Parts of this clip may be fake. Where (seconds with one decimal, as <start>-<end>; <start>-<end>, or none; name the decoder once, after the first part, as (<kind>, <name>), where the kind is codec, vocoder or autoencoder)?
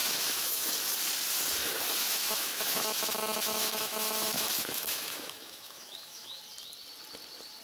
0.0-0.7 (autoencoder, DAC-VAE); 2.0-6.4